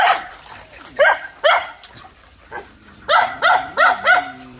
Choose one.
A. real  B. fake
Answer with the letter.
B